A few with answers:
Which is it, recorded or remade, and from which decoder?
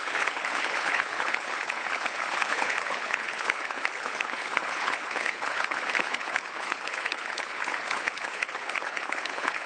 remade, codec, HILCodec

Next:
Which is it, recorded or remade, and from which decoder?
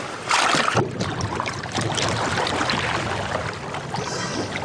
recorded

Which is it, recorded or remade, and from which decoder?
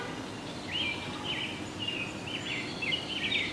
recorded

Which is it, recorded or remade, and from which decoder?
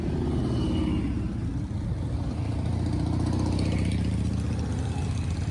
recorded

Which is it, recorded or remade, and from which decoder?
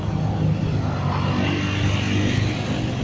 recorded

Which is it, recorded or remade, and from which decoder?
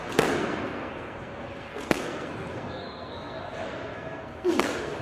remade, codec, SNAC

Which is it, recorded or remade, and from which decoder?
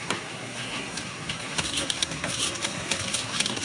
remade, codec, SNAC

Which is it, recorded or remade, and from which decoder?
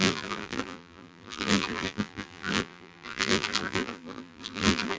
remade, vocoder, BigVGAN v2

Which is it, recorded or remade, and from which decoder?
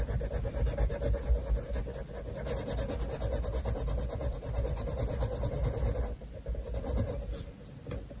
recorded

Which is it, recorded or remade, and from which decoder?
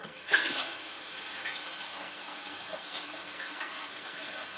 remade, codec, SNAC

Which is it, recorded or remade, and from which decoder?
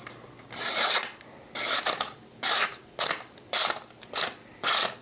recorded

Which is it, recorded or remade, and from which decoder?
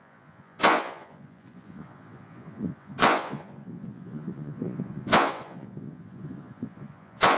remade, vocoder, Vocos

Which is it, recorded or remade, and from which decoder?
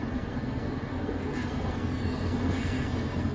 remade, codec, SNAC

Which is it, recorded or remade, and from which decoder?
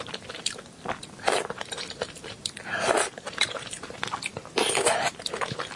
remade, vocoder, BigVGAN v2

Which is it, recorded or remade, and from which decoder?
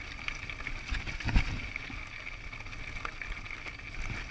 recorded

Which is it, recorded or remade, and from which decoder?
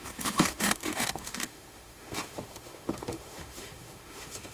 remade, autoencoder, DAC-VAE